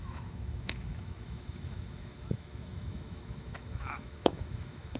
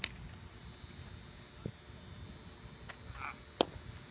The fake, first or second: first